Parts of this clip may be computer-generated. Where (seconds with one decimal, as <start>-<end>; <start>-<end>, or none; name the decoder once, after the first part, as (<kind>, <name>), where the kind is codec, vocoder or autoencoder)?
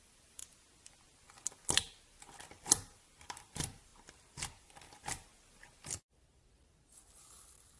0.0-0.4 (vocoder, BigVGAN v2); 2.2-3.9; 4.6-5.3; 7.3-7.8